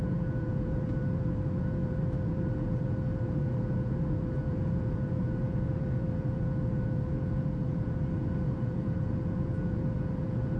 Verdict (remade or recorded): remade